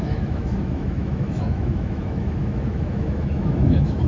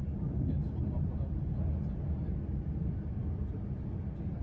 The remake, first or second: first